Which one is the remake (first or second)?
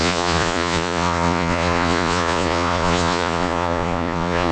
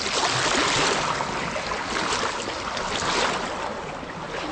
first